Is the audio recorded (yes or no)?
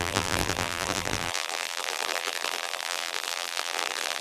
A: no